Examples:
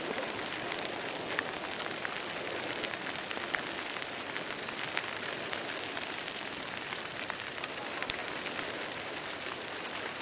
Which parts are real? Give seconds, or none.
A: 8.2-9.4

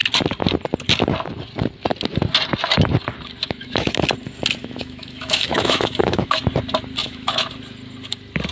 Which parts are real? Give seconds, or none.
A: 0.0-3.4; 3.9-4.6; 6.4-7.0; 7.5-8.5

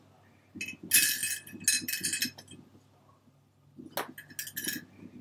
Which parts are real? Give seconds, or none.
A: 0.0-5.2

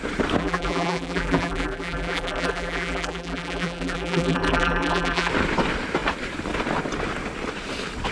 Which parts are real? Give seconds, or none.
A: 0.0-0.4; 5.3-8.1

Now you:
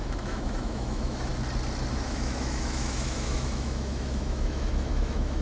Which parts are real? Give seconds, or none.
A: 1.3-1.9